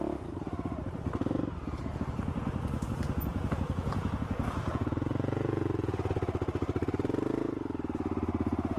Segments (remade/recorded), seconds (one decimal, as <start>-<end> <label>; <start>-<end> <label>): 0.0-3.3 recorded; 3.3-6.1 remade; 6.1-8.8 recorded